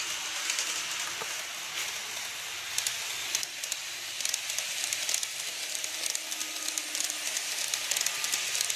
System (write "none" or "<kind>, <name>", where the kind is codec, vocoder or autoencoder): none